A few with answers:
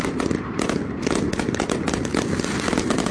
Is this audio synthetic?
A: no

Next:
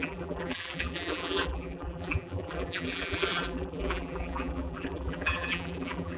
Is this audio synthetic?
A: yes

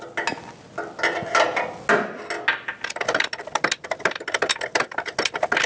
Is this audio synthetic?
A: no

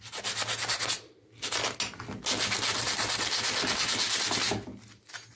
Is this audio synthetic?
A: no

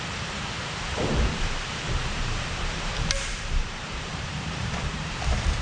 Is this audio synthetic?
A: yes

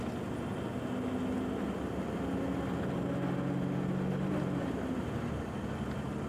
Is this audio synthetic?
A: no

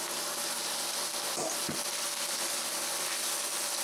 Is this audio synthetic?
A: no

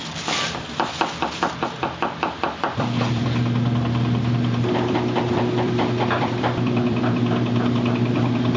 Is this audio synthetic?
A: yes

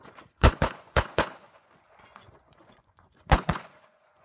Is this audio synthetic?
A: yes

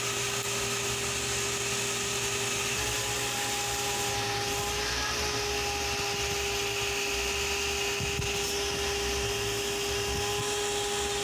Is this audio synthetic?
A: no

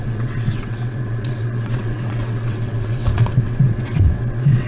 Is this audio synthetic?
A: yes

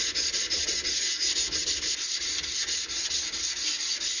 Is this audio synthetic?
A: no